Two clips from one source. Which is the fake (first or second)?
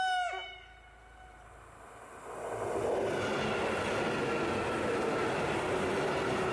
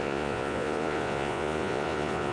second